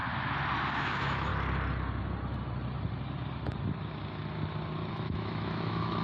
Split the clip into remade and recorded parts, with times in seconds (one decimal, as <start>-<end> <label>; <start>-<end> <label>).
0.0-0.8 recorded; 0.8-1.3 remade; 1.3-4.9 recorded; 4.9-6.0 remade